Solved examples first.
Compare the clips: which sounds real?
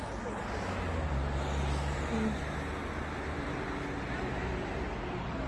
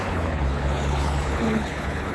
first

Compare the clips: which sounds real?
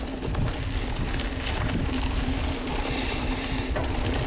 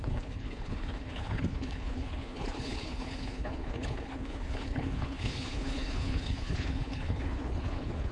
first